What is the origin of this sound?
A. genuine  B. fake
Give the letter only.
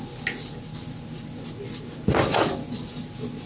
A